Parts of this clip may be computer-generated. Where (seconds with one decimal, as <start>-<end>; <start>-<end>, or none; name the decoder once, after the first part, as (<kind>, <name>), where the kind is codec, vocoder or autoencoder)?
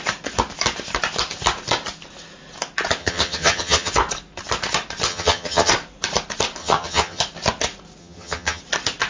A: 3.0-3.9 (vocoder, HiFi-GAN); 5.1-5.7; 6.6-7.2; 8.0-8.6